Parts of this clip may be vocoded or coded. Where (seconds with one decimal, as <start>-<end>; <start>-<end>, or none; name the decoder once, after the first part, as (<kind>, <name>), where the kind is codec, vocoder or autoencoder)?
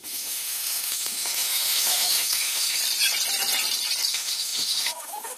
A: 0.0-2.8 (autoencoder, DAC-VAE); 4.1-5.4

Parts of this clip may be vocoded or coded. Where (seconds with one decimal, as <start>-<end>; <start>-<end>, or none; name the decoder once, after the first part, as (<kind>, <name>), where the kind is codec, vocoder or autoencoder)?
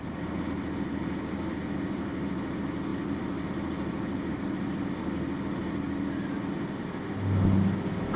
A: none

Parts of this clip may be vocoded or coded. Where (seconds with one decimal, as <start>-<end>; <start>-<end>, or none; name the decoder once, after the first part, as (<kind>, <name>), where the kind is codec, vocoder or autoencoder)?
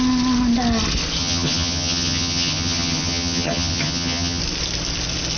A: 1.2-4.4 (vocoder, HiFi-GAN)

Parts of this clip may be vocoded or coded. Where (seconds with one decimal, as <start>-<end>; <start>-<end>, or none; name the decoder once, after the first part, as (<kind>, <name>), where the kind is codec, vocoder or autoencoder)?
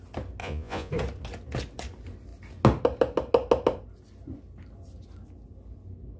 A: 0.4-0.9 (vocoder, Vocos)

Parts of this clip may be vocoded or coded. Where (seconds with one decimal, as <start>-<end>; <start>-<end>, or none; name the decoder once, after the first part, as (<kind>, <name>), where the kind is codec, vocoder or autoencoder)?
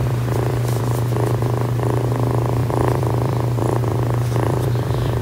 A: 0.0-0.8 (vocoder, BigVGAN v2); 2.6-5.2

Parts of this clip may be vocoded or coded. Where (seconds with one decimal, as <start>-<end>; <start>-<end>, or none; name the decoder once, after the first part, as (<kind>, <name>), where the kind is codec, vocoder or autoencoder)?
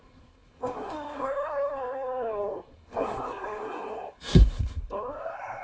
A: 0.0-5.6 (codec, SNAC)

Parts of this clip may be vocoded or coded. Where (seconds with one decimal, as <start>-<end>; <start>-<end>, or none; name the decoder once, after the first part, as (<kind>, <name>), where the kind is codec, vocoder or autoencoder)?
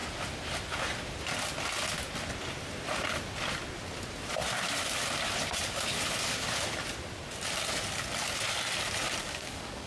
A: 9.2-9.9 (codec, DAC)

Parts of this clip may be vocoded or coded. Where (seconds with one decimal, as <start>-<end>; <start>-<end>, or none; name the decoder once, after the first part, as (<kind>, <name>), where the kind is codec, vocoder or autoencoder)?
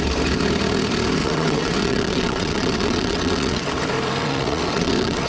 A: 1.2-3.7 (vocoder, WaveNeXt); 4.2-5.3